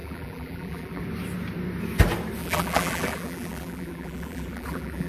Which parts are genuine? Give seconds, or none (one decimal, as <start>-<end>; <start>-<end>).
1.0-2.4